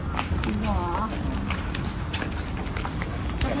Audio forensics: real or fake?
real